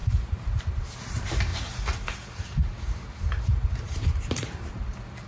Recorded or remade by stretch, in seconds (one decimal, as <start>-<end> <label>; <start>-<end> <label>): 0.0-0.6 remade; 0.6-1.5 recorded; 1.5-4.7 remade; 4.7-5.3 recorded